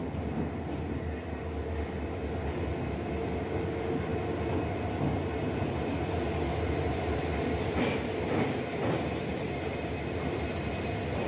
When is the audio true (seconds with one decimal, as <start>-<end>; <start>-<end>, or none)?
0.0-11.3